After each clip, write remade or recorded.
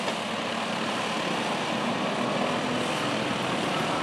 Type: recorded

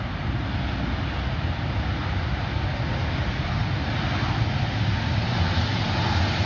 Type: recorded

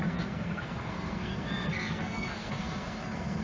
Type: remade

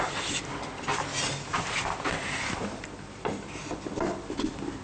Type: recorded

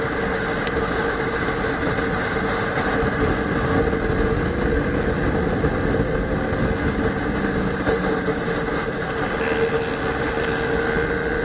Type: recorded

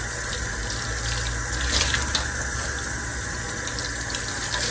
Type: recorded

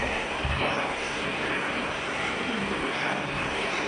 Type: remade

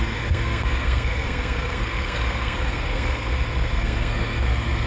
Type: remade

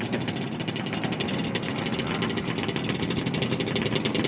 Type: recorded